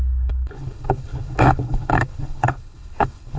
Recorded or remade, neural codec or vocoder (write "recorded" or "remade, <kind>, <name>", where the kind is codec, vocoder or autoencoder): remade, codec, HILCodec